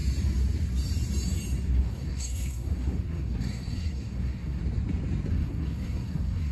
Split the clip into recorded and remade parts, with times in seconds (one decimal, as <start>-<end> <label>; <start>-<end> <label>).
0.0-1.7 recorded; 1.7-4.6 remade; 4.6-5.3 recorded; 5.3-6.5 remade